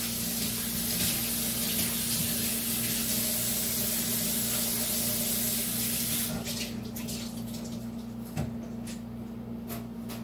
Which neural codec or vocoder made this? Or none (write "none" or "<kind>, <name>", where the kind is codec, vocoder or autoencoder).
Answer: none